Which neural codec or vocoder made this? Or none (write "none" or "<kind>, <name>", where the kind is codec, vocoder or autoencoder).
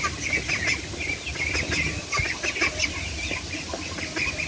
none